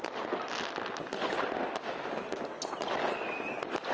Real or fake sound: real